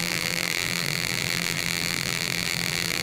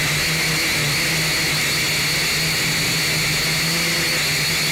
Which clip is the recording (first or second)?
second